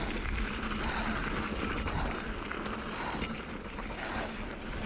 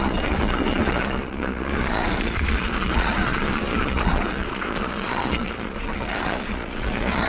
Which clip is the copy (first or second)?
second